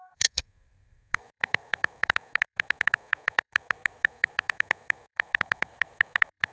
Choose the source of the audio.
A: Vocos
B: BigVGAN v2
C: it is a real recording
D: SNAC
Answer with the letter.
D